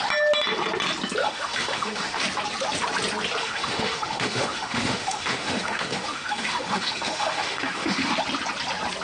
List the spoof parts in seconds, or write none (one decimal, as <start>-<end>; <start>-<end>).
1.2-2.2; 3.4-8.1